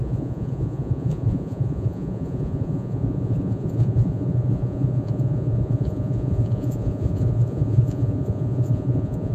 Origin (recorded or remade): remade